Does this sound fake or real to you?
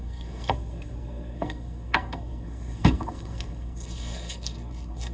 fake